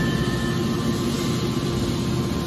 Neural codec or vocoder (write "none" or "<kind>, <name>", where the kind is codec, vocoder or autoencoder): none